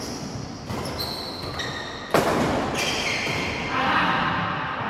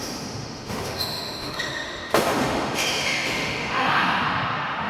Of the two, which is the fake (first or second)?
second